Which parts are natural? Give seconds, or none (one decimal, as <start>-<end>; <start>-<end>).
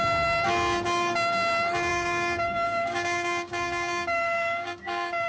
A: 0.0-1.9